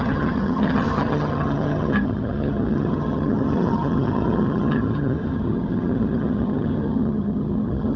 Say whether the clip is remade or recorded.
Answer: remade